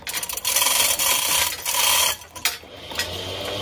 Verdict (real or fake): real